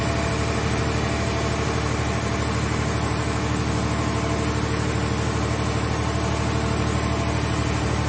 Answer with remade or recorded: recorded